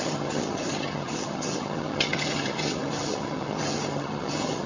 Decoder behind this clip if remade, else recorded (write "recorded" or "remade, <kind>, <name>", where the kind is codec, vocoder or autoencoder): remade, vocoder, HiFi-GAN